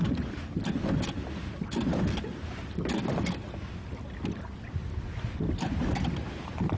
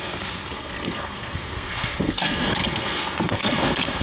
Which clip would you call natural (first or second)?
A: first